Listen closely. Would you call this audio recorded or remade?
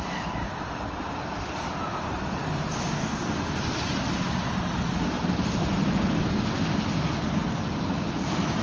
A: recorded